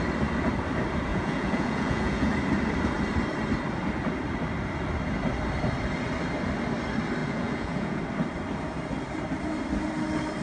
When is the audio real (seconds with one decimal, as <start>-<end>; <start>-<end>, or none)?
0.0-1.1; 2.3-7.2; 8.0-10.4